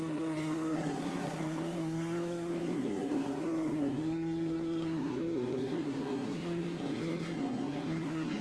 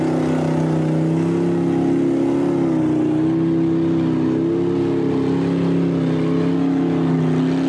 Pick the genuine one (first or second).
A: second